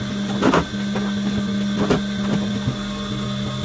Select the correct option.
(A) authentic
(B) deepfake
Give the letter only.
A